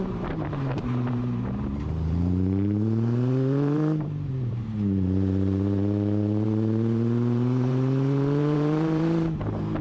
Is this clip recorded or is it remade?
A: remade